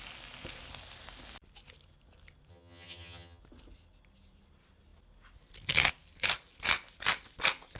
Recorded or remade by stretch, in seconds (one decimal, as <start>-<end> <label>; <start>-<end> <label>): 0.0-2.5 recorded; 2.5-3.4 remade; 3.4-7.8 recorded